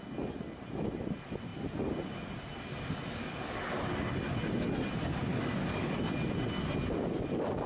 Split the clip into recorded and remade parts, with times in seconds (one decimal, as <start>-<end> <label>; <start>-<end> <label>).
0.0-3.2 recorded; 3.2-4.0 remade; 4.0-5.3 recorded; 5.3-6.0 remade; 6.0-7.7 recorded